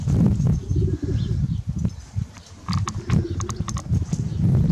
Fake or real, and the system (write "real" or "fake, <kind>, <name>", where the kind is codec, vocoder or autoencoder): real